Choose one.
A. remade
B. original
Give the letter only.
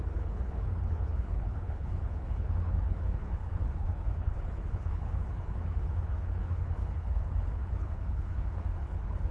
A